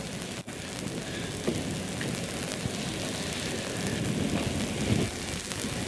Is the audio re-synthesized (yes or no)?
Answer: no